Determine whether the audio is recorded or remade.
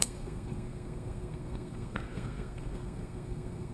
remade